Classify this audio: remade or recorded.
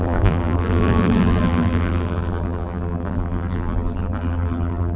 remade